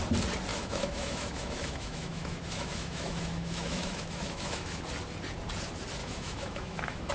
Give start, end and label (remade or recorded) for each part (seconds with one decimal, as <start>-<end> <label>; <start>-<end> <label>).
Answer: 0.0-0.5 recorded; 0.5-4.8 remade; 4.8-6.0 recorded; 6.0-7.1 remade